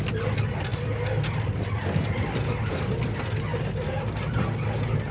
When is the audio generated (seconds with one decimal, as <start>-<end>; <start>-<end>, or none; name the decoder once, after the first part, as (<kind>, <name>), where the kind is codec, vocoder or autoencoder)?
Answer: none